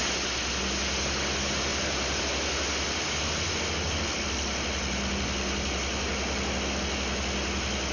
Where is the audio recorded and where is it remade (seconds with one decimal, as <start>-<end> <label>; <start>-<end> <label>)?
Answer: 0.0-1.7 recorded; 1.7-2.2 remade; 2.2-7.9 recorded